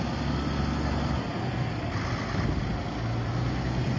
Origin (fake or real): real